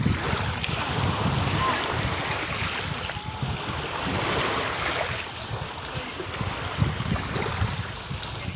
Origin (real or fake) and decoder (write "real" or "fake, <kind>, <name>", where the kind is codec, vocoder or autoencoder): real